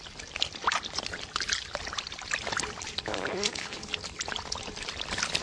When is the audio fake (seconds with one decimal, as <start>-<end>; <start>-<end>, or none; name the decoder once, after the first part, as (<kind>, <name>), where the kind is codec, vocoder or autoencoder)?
3.1-3.9 (codec, DAC)